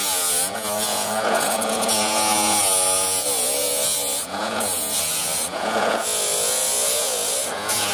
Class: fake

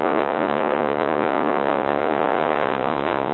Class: fake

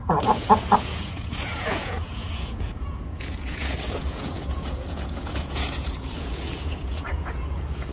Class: fake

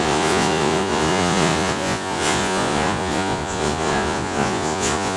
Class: fake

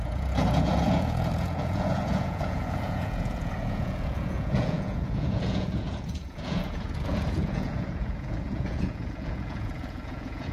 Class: fake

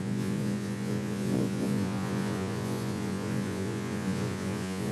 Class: fake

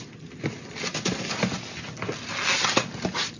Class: real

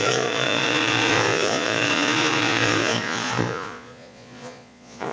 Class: fake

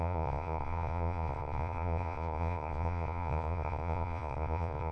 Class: fake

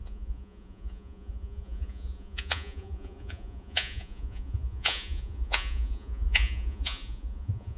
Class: fake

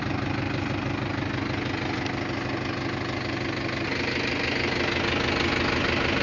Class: real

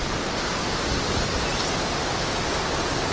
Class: real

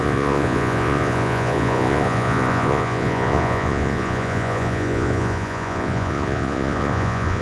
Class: fake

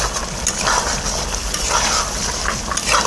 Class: real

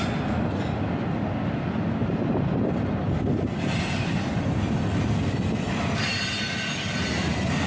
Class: real